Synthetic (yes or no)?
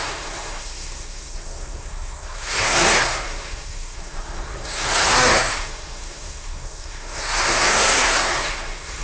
yes